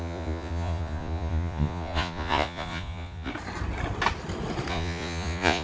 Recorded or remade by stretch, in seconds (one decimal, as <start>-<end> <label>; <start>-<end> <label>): 0.0-3.3 remade; 3.3-4.7 recorded; 4.7-5.6 remade